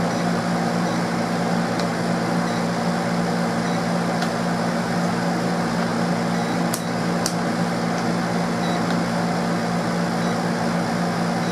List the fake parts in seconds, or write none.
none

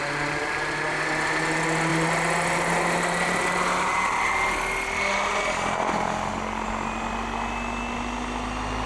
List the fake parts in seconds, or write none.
none

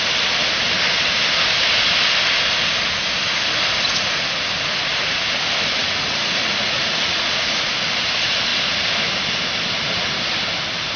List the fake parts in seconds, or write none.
5.8-7.7

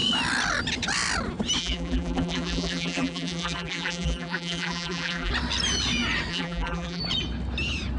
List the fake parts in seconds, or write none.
1.6-5.3; 6.3-7.0

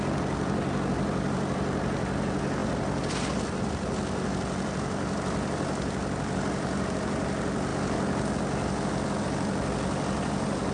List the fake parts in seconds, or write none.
none